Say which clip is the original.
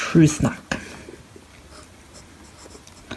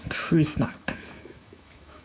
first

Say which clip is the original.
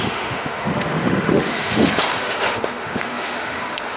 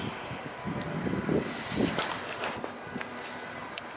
second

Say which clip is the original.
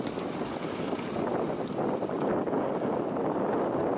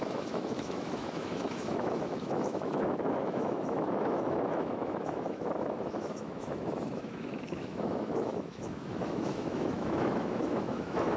first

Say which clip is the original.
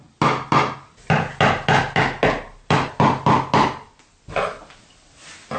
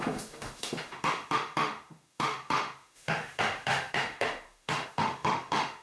first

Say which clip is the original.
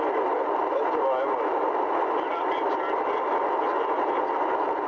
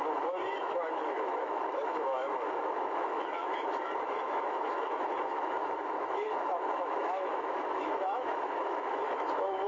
first